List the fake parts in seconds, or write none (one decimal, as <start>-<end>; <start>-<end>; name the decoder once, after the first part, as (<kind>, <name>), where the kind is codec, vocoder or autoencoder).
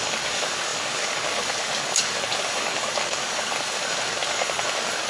0.0-5.1 (codec, DAC)